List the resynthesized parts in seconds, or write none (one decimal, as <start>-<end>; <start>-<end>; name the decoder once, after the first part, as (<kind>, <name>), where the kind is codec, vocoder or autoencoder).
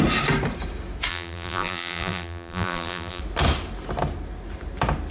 1.1-3.2 (vocoder, BigVGAN v2)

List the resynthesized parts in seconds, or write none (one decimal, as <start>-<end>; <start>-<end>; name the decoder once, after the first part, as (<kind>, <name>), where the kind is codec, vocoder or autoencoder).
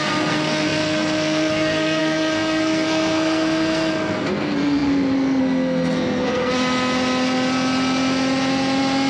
0.0-6.5 (codec, SNAC)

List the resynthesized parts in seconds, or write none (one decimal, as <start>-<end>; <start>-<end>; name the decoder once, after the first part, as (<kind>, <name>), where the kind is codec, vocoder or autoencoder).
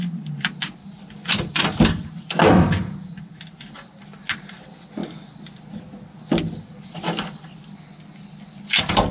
0.8-1.9 (vocoder, BigVGAN v2)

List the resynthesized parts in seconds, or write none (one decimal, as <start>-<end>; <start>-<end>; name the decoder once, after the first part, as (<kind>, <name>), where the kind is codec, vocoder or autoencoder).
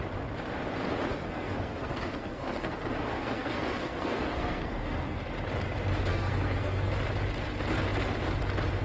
1.1-5.2 (codec, SNAC); 6.1-6.9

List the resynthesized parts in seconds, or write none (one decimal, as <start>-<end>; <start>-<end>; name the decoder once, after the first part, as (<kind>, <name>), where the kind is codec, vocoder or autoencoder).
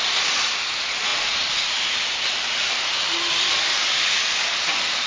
none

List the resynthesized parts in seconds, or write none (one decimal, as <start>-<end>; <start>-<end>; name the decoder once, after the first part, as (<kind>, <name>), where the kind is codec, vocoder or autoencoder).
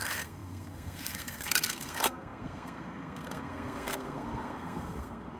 0.0-5.4 (codec, SNAC)